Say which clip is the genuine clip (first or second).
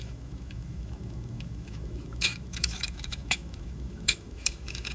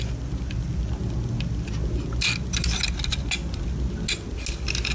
second